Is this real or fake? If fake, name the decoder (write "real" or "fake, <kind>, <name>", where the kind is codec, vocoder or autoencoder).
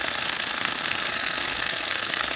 fake, codec, SNAC